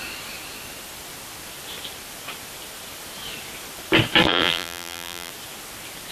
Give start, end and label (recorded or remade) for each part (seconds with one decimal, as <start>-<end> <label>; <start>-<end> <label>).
0.0-4.2 recorded; 4.2-5.3 remade; 5.3-6.1 recorded